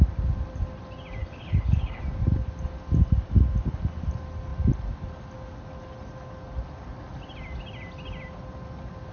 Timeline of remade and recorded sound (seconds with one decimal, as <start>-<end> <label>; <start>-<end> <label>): 0.0-1.2 recorded; 1.2-2.0 remade; 2.0-9.1 recorded

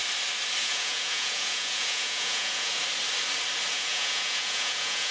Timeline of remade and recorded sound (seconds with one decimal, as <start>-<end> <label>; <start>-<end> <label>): 0.0-0.6 recorded; 0.6-2.8 remade; 2.8-3.7 recorded; 3.7-5.1 remade

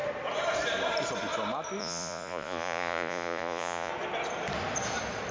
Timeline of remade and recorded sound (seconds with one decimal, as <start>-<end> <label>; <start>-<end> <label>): 0.0-1.8 recorded; 1.8-3.9 remade; 3.9-5.3 recorded

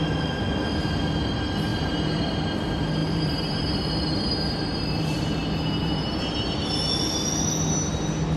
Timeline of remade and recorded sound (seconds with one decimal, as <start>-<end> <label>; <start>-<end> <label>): 0.0-1.7 recorded; 1.7-2.2 remade; 2.2-3.0 recorded; 3.0-6.7 remade; 6.7-8.4 recorded

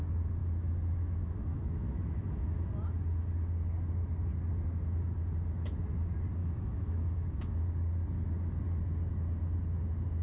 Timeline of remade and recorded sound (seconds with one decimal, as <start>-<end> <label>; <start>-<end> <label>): 0.0-0.4 recorded; 0.4-2.7 remade; 2.7-6.4 recorded; 6.4-7.6 remade; 7.6-10.2 recorded

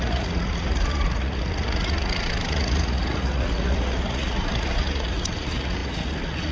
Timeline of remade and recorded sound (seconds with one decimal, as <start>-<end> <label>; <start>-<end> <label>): 0.0-6.5 remade